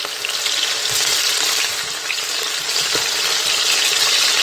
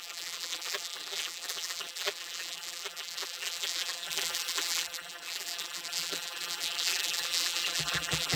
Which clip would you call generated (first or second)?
second